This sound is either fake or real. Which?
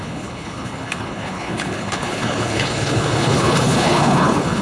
fake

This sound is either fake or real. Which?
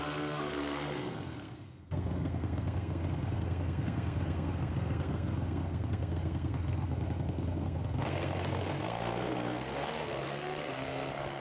fake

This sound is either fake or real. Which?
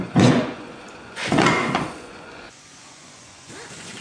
fake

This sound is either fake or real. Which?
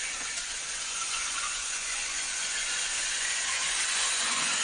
fake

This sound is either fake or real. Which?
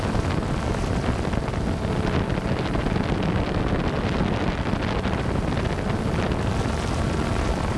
real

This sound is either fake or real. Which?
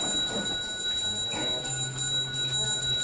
real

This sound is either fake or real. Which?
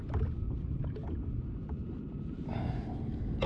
real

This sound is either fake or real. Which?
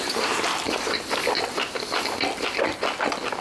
real